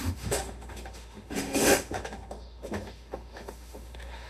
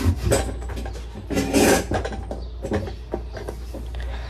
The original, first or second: second